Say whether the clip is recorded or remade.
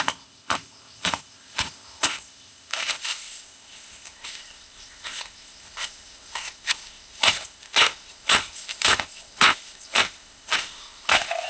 remade